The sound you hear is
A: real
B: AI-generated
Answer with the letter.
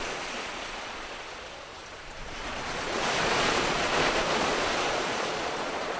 B